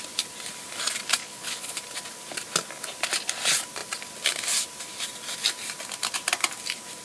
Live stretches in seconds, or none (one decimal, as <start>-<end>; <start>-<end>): 0.0-1.2; 1.8-7.0